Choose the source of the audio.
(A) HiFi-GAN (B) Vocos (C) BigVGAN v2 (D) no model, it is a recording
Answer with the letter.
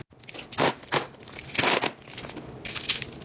D